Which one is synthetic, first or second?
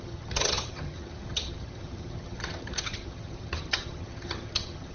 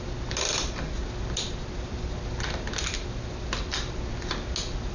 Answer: first